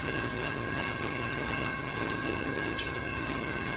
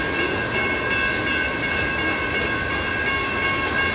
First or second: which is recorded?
second